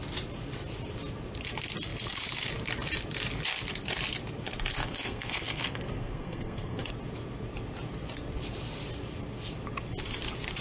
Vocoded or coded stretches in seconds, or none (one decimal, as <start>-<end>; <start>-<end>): 4.8-6.9